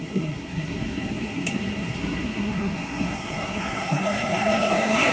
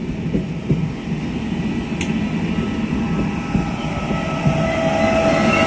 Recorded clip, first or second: second